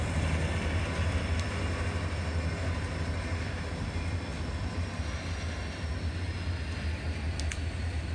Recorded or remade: recorded